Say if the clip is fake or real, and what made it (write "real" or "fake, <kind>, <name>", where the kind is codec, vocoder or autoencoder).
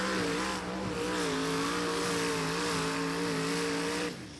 real